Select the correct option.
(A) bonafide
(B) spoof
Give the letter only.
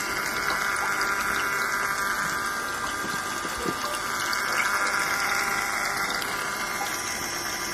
A